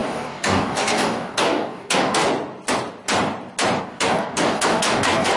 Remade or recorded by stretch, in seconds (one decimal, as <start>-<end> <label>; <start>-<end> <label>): 0.0-2.2 remade; 2.2-3.8 recorded; 3.8-5.4 remade